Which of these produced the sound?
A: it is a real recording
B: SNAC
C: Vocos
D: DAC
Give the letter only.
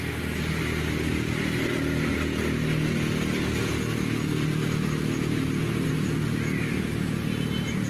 A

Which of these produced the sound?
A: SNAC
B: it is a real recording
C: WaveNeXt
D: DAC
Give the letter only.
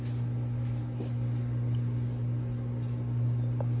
B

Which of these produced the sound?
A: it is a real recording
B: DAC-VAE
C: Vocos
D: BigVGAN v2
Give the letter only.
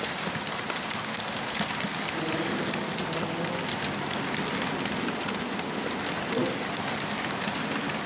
A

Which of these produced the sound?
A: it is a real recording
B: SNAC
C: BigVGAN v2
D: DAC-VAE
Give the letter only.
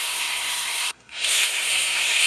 B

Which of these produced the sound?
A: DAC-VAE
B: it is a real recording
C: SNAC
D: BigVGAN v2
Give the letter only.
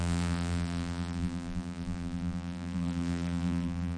D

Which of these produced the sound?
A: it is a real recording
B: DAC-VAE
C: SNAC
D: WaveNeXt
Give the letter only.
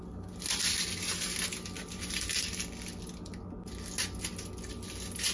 A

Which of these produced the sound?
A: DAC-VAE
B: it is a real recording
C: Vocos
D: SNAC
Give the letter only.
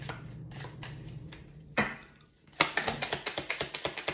B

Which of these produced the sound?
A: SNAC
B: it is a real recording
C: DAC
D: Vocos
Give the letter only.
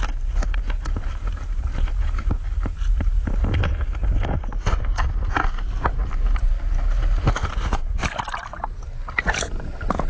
B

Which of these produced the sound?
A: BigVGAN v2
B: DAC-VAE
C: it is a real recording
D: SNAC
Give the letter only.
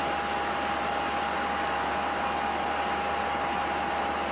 C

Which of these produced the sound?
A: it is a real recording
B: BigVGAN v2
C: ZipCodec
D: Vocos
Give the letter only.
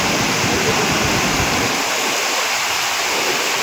B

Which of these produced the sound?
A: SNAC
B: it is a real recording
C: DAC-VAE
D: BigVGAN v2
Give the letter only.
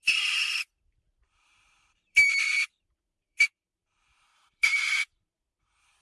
D